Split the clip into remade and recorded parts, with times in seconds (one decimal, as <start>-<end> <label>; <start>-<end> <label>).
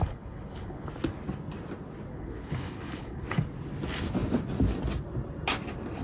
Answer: 0.0-0.9 remade; 0.9-2.1 recorded; 2.1-3.4 remade; 3.4-6.0 recorded